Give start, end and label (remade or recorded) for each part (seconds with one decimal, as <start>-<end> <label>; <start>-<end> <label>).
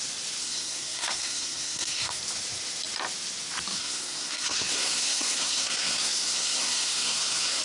0.0-0.4 recorded; 0.4-2.2 remade; 2.2-3.7 recorded; 3.7-7.6 remade